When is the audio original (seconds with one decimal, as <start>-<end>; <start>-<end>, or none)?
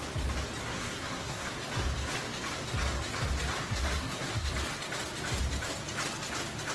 0.0-0.6; 1.5-3.6; 4.5-6.7